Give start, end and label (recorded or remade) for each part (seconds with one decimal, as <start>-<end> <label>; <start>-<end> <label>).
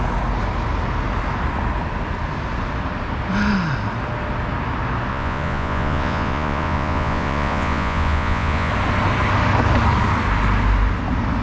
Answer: 0.0-5.1 recorded; 5.1-8.7 remade; 8.7-11.4 recorded